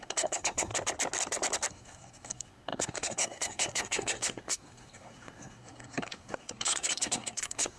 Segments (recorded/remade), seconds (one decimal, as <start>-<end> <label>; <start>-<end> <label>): 0.0-0.7 remade; 0.7-1.7 recorded; 1.7-7.8 remade